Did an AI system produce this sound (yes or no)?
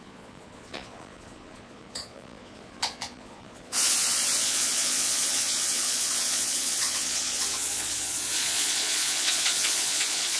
yes